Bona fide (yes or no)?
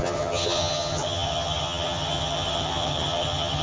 no